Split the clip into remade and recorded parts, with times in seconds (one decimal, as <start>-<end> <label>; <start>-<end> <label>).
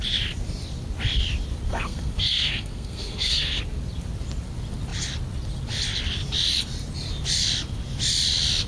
0.0-1.7 recorded; 1.7-3.6 remade; 3.6-8.7 recorded